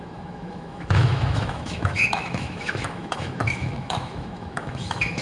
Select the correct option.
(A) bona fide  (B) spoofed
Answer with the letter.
B